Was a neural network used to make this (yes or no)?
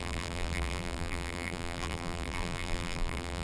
yes